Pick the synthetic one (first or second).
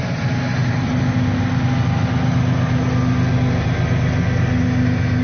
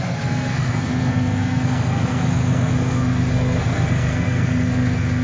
second